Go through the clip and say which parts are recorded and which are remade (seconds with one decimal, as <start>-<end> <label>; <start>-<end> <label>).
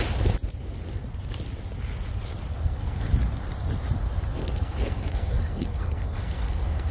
0.0-2.5 recorded; 2.5-3.1 remade; 3.1-4.4 recorded; 4.4-6.9 remade